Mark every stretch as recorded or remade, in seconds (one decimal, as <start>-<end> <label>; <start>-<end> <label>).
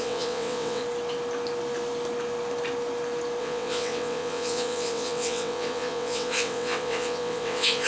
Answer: 0.0-0.8 remade; 0.8-3.4 recorded; 3.4-7.9 remade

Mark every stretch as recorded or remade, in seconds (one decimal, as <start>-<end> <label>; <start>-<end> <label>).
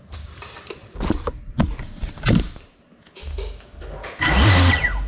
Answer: 0.0-2.9 remade; 2.9-4.2 recorded; 4.2-5.1 remade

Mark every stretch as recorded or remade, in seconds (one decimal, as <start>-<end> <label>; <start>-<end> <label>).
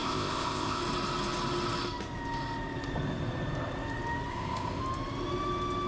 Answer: 0.0-0.8 remade; 0.8-4.3 recorded; 4.3-4.8 remade; 4.8-5.9 recorded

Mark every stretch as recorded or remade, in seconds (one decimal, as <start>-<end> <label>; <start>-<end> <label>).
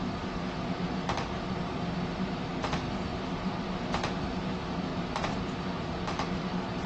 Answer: 0.0-6.9 remade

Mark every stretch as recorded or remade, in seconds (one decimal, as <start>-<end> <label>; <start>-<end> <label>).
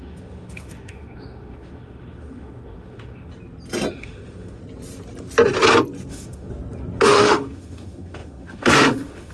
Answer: 0.0-3.3 remade; 3.3-3.9 recorded; 3.9-4.6 remade; 4.6-6.1 recorded; 6.1-6.5 remade; 6.5-7.0 recorded; 7.0-9.3 remade